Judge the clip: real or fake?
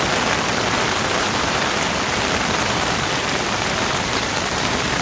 fake